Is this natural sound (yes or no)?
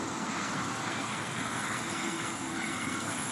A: no